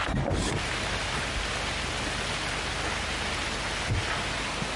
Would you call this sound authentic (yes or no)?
yes